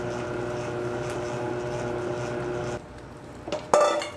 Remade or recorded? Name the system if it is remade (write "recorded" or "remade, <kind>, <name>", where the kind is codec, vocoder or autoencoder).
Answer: recorded